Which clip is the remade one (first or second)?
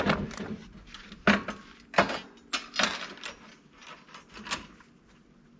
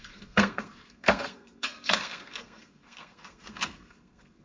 second